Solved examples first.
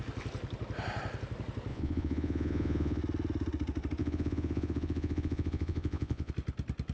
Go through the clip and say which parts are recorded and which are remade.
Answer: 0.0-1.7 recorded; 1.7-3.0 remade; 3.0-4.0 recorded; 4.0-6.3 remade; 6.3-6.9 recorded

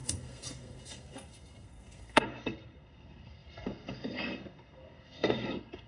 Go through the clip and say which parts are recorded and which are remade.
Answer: 0.0-5.9 remade